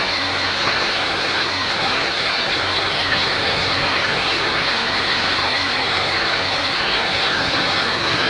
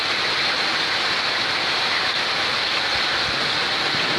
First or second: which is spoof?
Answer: first